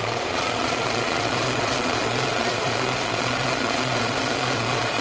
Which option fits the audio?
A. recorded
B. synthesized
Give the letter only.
B